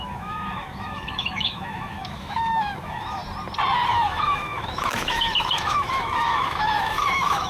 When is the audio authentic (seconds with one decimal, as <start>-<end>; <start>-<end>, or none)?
3.2-3.9